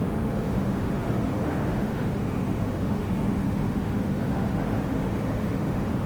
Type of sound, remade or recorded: remade